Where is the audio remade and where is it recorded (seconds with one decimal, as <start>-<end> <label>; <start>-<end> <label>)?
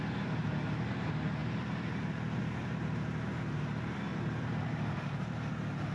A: 0.0-1.4 recorded; 1.4-2.4 remade; 2.4-4.1 recorded; 4.1-5.5 remade; 5.5-5.9 recorded